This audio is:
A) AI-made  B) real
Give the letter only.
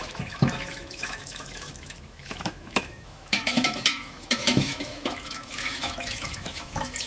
A